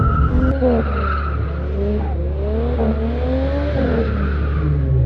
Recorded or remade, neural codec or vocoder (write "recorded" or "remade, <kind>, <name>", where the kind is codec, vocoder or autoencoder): recorded